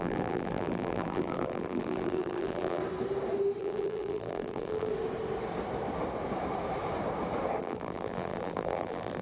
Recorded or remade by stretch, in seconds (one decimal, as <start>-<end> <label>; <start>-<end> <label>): 0.0-2.8 remade; 2.8-3.6 recorded; 3.6-4.9 remade; 4.9-7.6 recorded; 7.6-9.2 remade